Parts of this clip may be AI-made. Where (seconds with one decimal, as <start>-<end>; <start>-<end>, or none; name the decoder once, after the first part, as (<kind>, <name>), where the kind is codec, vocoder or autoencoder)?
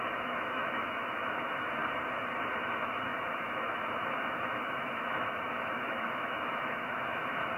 0.0-1.8 (autoencoder, DAC-VAE); 2.6-7.6